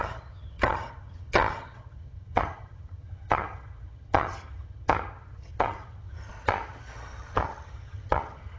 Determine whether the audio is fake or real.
fake